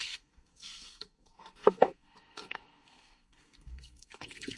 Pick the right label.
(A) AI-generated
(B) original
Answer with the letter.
A